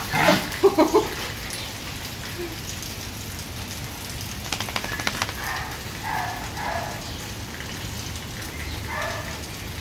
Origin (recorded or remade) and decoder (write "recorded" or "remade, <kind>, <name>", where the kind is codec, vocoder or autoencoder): recorded